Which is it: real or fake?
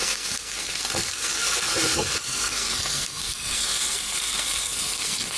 fake